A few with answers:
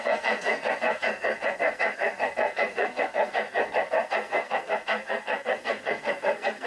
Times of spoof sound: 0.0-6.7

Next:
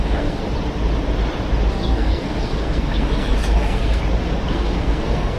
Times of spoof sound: 0.0-0.4; 1.7-4.0; 4.5-5.4

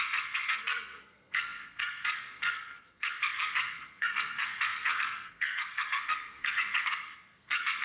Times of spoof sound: 0.0-7.8

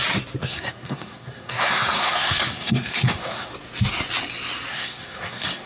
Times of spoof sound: 0.4-3.5; 4.7-5.7

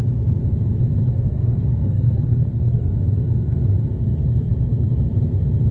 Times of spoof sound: 1.1-2.9

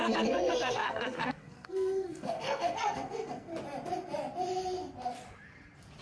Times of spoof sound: 0.0-3.5